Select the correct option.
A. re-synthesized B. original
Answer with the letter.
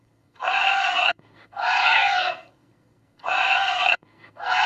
A